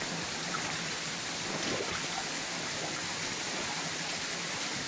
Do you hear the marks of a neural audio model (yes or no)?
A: yes